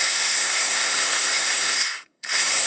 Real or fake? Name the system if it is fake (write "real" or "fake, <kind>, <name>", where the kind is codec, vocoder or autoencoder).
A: fake, codec, SNAC